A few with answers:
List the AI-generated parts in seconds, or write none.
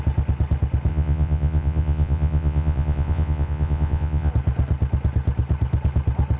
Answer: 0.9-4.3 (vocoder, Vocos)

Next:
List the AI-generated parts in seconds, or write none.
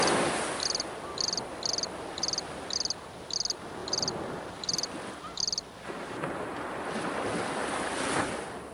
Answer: none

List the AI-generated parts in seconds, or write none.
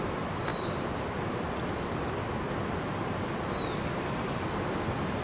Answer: none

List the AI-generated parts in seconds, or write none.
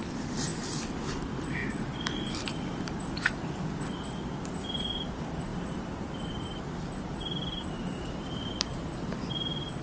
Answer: 5.5-6.6 (vocoder, BigVGAN v2); 7.4-8.7